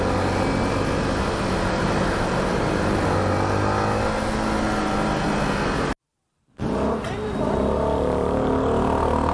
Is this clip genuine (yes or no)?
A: yes